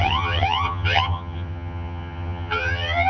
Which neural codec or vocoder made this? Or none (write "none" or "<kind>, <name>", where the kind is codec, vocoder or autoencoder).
vocoder, HiFi-GAN